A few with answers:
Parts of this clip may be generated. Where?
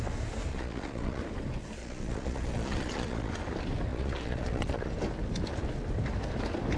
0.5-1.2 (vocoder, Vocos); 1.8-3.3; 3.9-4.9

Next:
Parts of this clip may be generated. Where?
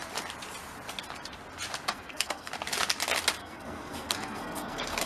1.9-2.5 (codec, SNAC); 3.4-5.1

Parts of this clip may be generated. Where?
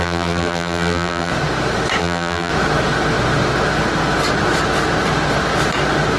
0.0-1.3 (vocoder, BigVGAN v2); 2.0-2.5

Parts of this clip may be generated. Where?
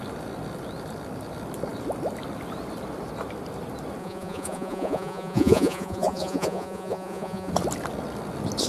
4.0-7.5 (vocoder, Vocos)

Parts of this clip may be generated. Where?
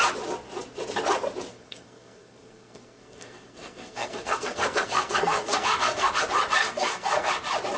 1.5-6.1 (codec, SNAC); 6.6-7.3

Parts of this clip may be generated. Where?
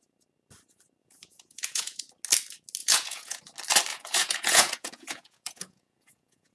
1.0-2.0 (vocoder, Vocos); 2.8-3.4; 3.9-6.5